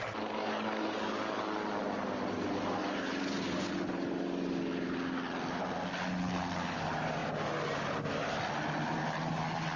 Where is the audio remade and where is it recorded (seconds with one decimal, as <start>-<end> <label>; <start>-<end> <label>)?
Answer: 0.0-0.4 recorded; 0.4-1.4 remade; 1.4-9.8 recorded